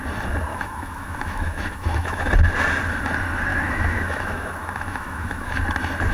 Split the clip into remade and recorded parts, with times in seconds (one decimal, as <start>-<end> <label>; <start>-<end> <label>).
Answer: 0.0-0.5 recorded; 0.5-2.3 remade; 2.3-3.5 recorded; 3.5-5.6 remade; 5.6-6.1 recorded